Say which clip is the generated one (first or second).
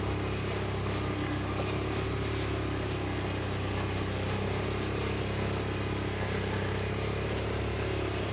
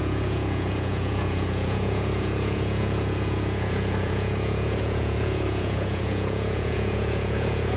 second